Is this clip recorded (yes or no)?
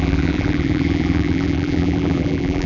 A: no